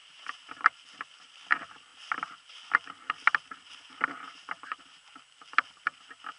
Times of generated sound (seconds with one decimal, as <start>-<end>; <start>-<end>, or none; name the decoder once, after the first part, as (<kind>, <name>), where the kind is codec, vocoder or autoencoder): 1.3-1.9 (vocoder, BigVGAN v2); 3.8-6.4